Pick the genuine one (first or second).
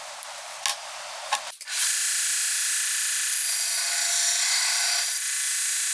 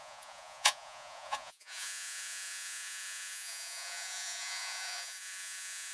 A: first